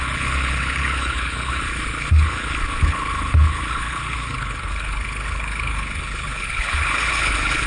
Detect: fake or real fake